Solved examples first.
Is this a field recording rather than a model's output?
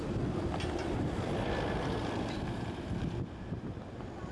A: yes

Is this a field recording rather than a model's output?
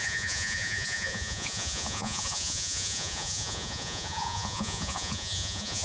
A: no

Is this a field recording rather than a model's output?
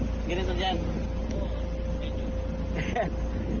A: yes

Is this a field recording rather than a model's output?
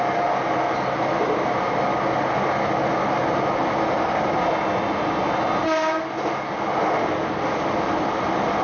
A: yes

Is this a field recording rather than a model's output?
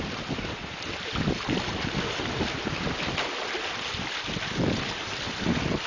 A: yes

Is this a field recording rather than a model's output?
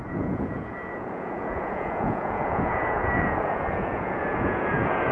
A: no